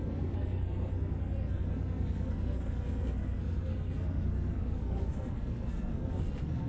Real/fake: fake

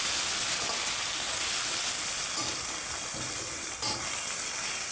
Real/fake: real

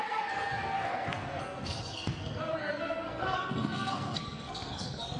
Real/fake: fake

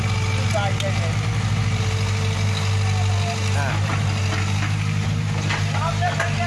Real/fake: real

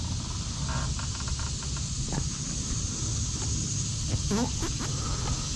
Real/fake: real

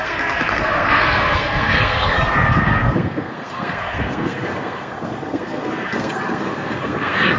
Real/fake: fake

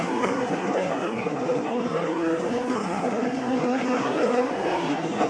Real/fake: fake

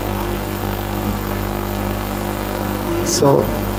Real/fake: fake